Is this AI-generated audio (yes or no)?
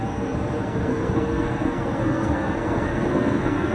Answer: yes